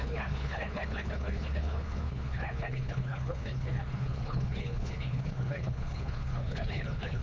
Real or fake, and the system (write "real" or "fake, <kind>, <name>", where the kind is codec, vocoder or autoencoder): fake, codec, HILCodec